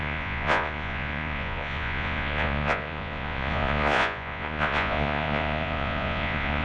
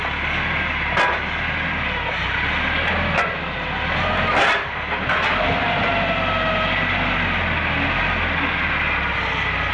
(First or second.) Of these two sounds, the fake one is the first